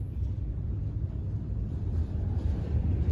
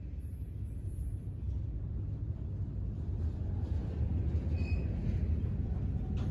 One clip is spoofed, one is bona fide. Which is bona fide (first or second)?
second